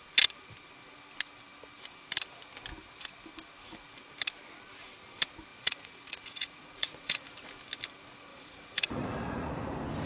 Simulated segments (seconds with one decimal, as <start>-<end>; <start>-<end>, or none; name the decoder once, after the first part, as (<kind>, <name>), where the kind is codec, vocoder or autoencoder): 5.5-7.4 (vocoder, Vocos); 8.3-9.7